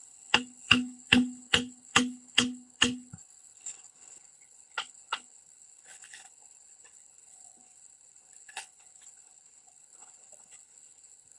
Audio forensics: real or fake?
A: fake